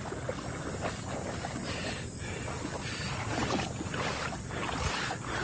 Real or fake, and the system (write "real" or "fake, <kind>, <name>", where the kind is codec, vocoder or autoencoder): real